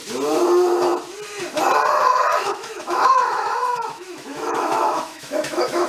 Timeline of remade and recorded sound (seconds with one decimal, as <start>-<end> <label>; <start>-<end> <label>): 0.0-2.3 recorded; 2.3-5.9 remade